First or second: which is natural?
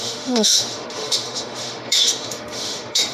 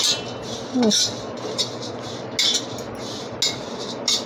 second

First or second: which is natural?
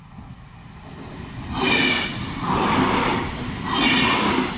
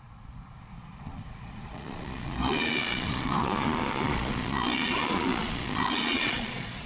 first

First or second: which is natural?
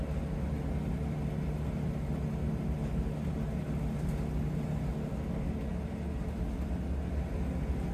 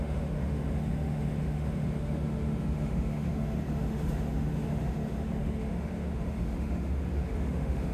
first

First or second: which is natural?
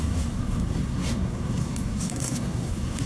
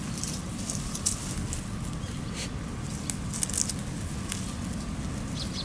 second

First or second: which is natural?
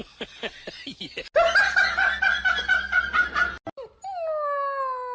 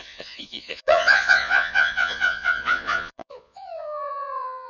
first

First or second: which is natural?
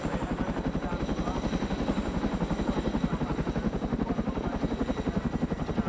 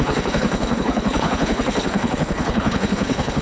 first